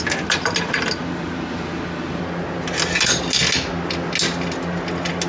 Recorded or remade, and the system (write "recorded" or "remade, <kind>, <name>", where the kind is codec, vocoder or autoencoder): recorded